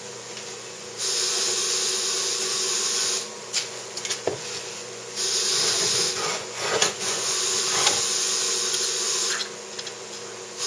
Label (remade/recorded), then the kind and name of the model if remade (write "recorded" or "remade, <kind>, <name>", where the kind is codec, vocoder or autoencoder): remade, vocoder, Vocos